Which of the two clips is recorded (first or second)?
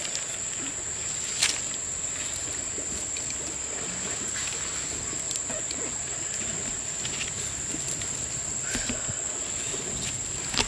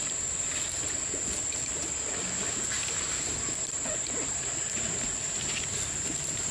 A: first